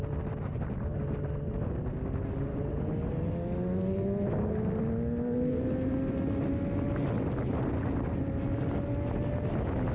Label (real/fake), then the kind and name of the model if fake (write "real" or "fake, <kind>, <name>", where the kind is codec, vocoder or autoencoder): real